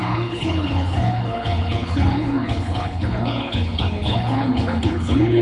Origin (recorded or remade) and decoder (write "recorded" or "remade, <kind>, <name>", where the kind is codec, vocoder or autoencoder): remade, codec, HILCodec